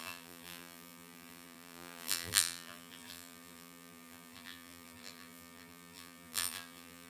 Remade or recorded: remade